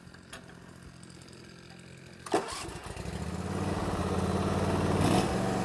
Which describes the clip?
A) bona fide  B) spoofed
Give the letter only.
A